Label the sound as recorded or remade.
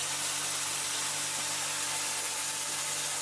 recorded